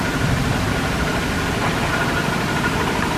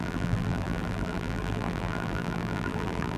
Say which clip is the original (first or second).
first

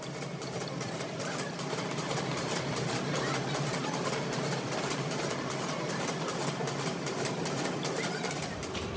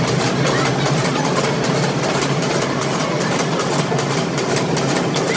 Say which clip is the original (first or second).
second